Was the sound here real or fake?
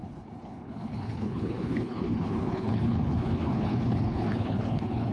fake